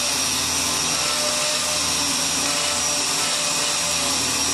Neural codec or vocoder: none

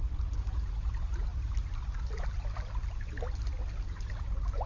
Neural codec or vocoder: none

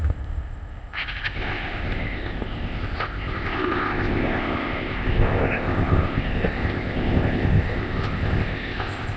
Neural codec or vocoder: codec, ZipCodec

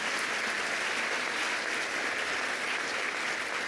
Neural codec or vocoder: none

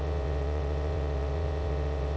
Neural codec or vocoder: vocoder, WaveNeXt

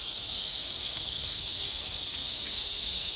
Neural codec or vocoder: codec, SNAC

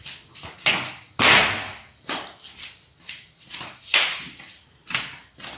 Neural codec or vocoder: none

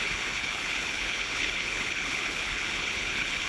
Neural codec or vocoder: codec, HILCodec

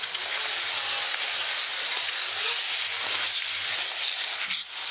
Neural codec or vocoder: none